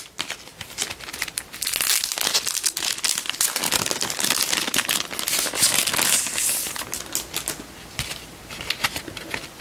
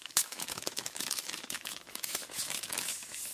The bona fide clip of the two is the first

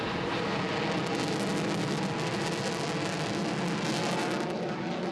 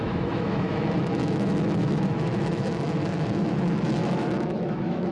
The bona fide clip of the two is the first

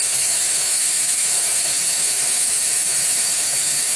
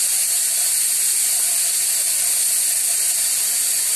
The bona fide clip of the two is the second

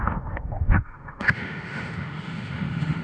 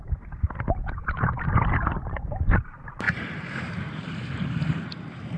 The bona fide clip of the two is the second